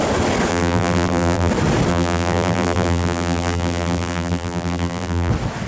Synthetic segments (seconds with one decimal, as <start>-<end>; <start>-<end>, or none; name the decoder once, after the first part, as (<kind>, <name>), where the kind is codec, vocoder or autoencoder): 0.5-1.5 (vocoder, BigVGAN v2); 1.9-5.3